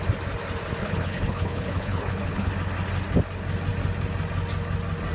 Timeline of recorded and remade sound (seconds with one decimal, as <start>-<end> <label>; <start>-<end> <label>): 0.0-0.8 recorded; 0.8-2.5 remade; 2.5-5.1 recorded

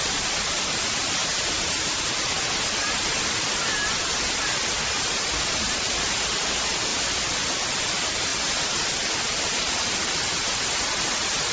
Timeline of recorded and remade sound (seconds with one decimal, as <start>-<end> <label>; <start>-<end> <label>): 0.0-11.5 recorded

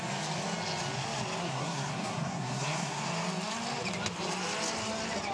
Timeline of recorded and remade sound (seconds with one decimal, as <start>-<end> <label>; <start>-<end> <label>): 0.0-1.4 recorded; 1.4-3.0 remade; 3.0-5.3 recorded

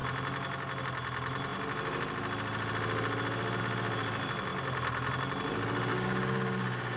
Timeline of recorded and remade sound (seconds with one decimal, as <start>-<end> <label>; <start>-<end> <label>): 0.0-5.9 recorded; 5.9-7.0 remade

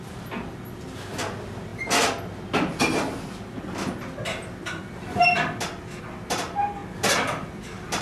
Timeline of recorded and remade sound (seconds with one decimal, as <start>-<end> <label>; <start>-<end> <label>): 0.0-8.0 recorded

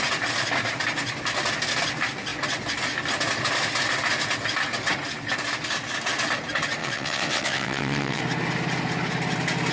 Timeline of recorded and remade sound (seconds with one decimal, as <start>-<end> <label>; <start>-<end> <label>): 0.0-6.8 recorded; 6.8-8.2 remade; 8.2-9.7 recorded